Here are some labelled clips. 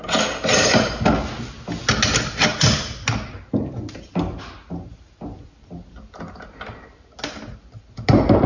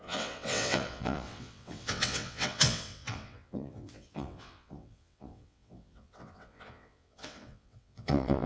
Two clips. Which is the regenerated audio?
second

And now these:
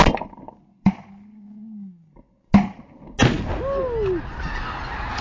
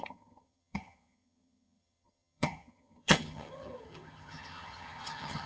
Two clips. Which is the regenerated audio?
second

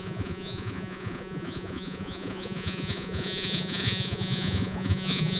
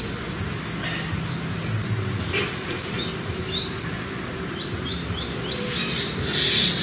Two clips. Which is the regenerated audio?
first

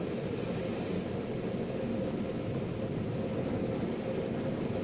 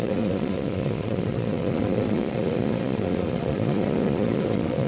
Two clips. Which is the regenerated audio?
second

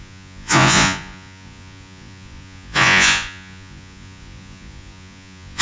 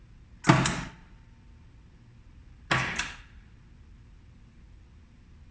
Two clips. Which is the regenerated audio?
first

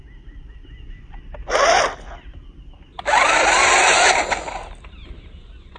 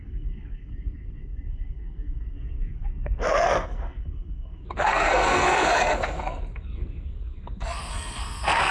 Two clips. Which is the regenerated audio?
second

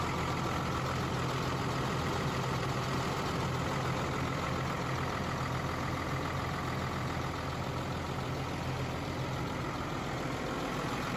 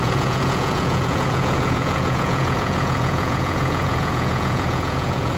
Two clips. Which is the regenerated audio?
second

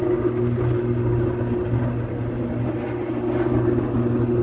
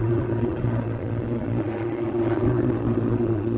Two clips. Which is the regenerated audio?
second